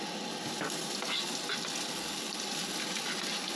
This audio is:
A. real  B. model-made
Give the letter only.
B